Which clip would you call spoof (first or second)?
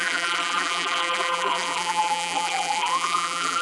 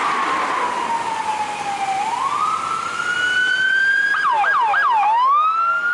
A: first